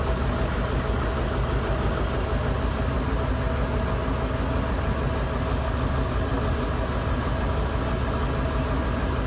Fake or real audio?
real